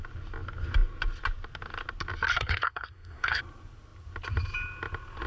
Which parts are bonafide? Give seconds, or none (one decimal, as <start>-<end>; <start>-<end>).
0.0-2.3; 3.4-5.3